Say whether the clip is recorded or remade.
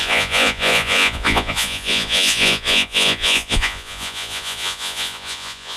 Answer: remade